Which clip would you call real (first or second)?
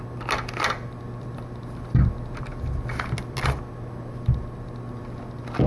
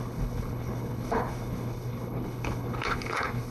first